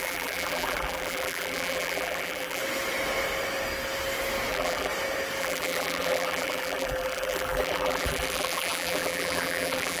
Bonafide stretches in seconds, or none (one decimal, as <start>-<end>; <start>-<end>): 2.6-4.5; 4.9-5.4